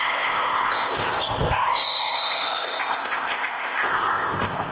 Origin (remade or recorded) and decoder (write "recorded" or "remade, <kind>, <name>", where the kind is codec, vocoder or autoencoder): remade, codec, ZipCodec